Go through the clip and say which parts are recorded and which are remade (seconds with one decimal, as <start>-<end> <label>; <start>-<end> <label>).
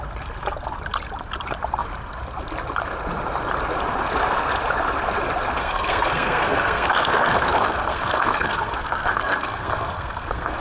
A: 0.0-5.6 recorded; 5.6-10.6 remade